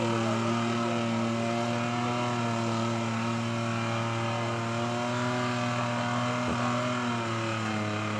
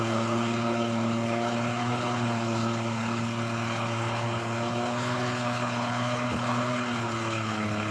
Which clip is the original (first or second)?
first